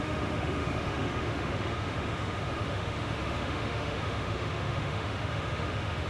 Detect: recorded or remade remade